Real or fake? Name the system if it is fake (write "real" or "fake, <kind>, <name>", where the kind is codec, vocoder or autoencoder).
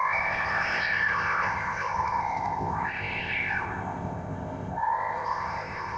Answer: fake, codec, ZipCodec